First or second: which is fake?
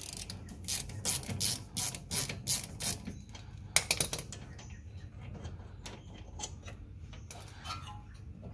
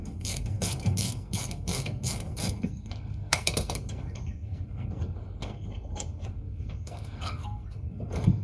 second